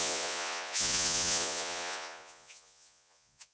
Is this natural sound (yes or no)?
no